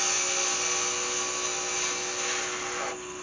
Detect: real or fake real